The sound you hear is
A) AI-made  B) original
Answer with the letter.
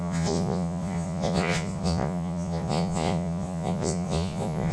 A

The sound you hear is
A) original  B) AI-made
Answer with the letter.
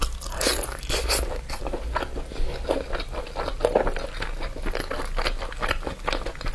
A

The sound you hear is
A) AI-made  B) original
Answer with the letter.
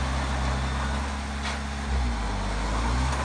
B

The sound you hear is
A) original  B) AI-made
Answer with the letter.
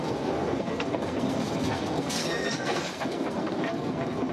B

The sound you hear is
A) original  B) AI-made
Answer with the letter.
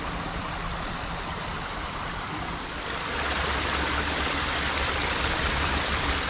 A